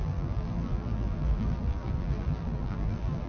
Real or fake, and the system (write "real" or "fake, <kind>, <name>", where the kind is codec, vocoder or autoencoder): fake, vocoder, BigVGAN v2